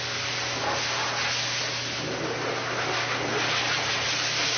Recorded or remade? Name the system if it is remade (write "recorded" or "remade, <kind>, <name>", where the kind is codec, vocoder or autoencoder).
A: recorded